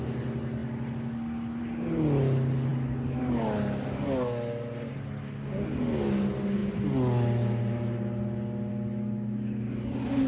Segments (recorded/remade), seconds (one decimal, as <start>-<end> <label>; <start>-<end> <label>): 0.0-10.3 recorded